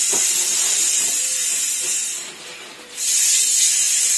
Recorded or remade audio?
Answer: recorded